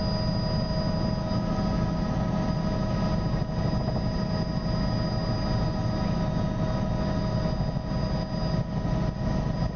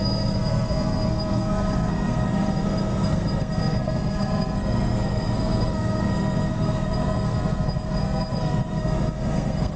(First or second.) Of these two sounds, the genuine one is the first